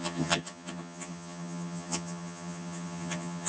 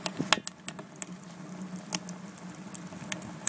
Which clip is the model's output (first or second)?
first